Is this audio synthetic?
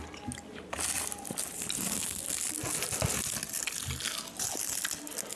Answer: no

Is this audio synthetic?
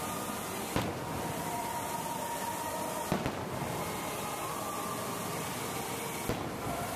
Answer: no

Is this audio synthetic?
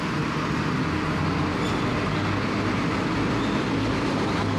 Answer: no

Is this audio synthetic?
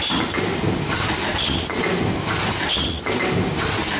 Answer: no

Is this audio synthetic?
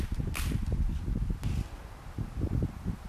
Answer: no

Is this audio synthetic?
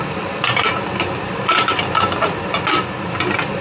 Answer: no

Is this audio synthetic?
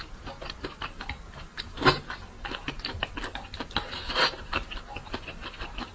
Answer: no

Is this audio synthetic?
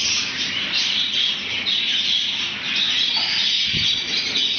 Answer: no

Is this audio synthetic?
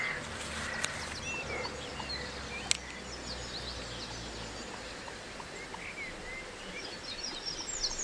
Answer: no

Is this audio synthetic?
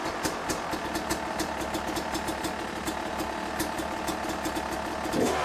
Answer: no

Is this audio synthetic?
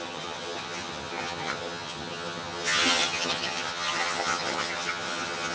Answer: yes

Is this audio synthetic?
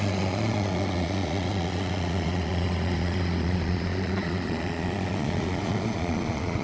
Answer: yes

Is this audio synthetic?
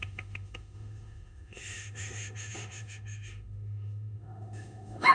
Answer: yes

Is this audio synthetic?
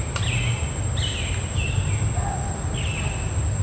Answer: no